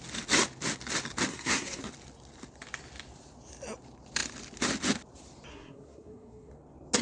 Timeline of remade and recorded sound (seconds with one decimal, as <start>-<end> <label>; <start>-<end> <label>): 0.0-1.3 recorded; 1.3-1.8 remade; 1.8-5.5 recorded; 5.5-6.5 remade; 6.5-7.0 recorded